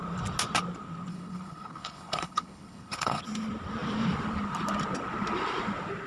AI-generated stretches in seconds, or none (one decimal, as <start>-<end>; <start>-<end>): 1.1-3.2